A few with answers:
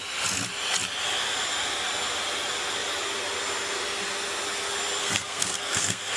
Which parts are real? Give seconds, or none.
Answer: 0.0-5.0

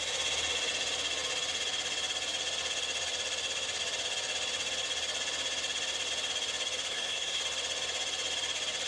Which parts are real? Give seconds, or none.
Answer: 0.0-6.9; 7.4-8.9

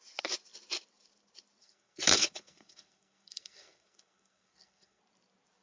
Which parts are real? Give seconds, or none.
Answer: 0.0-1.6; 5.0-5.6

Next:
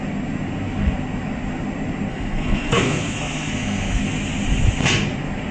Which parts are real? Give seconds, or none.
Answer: 0.0-2.1; 4.0-5.5

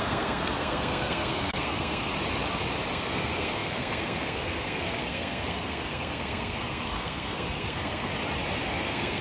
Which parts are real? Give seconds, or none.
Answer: 2.1-2.9; 8.1-8.7